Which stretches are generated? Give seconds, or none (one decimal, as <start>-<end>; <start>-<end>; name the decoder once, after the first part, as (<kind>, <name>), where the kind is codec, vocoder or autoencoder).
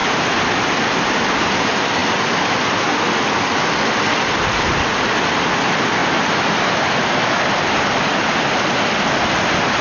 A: 0.0-1.1 (vocoder, BigVGAN v2); 6.0-8.5